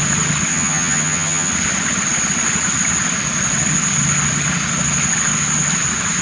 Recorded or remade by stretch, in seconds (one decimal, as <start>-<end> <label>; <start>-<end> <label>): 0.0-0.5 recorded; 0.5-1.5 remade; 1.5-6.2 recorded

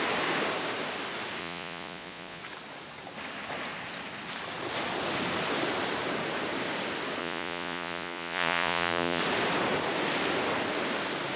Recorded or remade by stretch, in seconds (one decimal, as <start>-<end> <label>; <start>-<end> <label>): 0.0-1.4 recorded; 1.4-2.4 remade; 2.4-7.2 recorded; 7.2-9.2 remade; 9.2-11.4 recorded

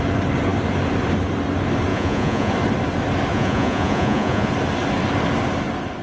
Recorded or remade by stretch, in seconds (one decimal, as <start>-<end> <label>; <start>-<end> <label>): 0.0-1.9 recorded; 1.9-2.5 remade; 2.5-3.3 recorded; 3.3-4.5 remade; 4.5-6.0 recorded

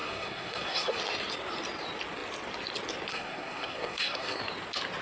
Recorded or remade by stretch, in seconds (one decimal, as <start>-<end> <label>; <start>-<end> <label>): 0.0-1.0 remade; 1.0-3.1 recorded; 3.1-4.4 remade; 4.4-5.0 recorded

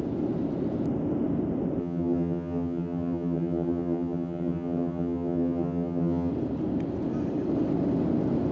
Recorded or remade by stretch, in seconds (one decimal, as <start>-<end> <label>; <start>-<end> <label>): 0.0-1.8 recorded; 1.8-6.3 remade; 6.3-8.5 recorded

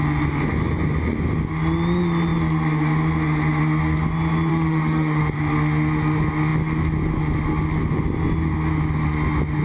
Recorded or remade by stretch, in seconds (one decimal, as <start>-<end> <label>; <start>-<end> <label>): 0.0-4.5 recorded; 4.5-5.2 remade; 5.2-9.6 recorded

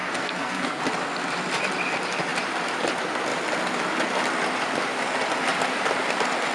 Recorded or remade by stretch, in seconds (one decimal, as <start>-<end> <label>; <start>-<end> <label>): 0.0-0.8 remade; 0.8-6.5 recorded

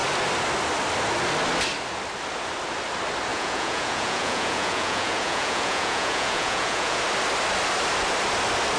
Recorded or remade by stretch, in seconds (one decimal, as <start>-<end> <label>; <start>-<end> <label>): 0.0-3.3 recorded; 3.3-7.0 remade; 7.0-8.8 recorded